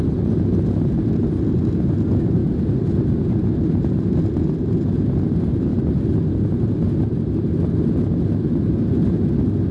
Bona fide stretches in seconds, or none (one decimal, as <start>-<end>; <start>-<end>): 0.0-2.4; 4.6-5.7; 6.9-9.7

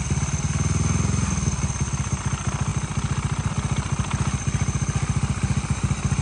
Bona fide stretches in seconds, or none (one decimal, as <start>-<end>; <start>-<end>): 0.0-6.2

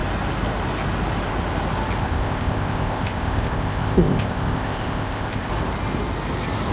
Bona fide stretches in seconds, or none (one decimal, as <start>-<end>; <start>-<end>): 0.0-2.0; 5.5-6.7

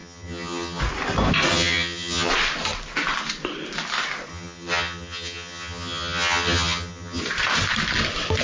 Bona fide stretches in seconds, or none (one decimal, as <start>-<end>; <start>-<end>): 0.8-1.5; 2.3-4.3; 7.2-8.4

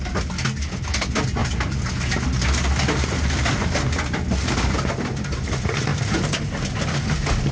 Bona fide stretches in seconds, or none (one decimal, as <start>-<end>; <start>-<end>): 0.0-1.4; 1.9-7.5